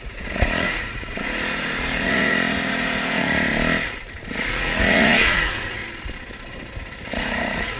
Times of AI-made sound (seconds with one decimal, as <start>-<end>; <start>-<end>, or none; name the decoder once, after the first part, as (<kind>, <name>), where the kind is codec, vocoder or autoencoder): 0.0-3.5 (vocoder, Vocos); 4.3-5.8; 7.1-7.8